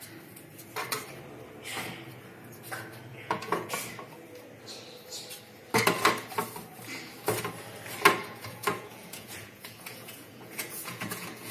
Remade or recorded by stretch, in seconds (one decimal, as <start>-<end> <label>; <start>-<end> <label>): 0.0-3.1 recorded; 3.1-3.7 remade; 3.7-8.2 recorded; 8.2-11.5 remade